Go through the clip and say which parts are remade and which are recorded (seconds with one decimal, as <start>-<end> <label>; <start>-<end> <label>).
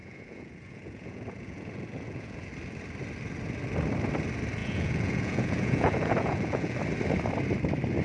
0.0-2.5 remade; 2.5-4.6 recorded; 4.6-6.8 remade; 6.8-8.0 recorded